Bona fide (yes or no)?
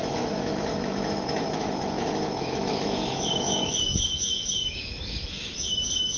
no